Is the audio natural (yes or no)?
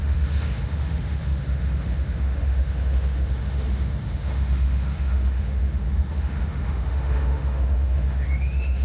no